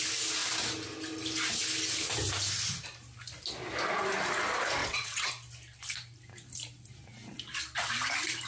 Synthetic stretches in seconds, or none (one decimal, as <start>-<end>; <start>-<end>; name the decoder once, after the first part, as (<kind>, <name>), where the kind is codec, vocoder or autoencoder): 4.8-5.3 (vocoder, WaveNeXt)